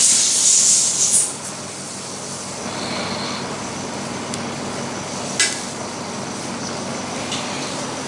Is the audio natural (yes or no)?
yes